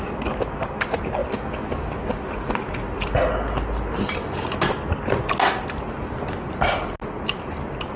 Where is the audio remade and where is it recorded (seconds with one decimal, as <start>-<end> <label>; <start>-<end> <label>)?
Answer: 0.0-8.0 recorded

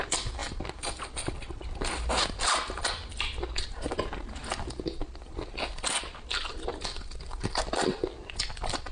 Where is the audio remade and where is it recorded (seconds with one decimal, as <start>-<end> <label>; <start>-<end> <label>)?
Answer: 0.0-8.9 recorded